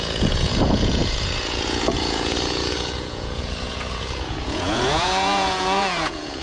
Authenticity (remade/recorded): remade